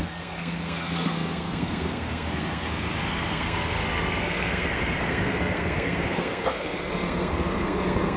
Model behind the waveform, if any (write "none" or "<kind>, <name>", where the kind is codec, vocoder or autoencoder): codec, SNAC